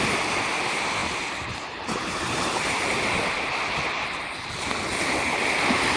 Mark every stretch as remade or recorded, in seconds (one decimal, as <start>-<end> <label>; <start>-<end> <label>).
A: 0.0-6.0 recorded